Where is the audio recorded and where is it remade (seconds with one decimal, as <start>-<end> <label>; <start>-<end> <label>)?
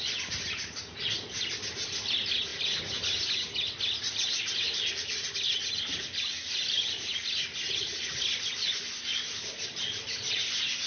0.0-10.9 recorded